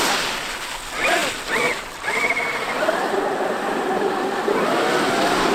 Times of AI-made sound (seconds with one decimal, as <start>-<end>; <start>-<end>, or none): none